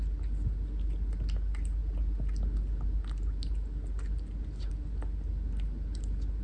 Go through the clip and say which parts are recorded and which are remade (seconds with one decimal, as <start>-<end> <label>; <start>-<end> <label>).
0.0-6.4 recorded